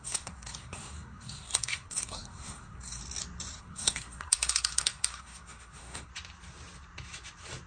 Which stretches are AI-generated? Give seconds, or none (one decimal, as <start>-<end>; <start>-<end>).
0.0-3.0; 3.6-6.1